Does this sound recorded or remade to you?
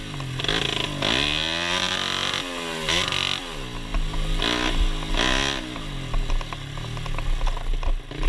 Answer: recorded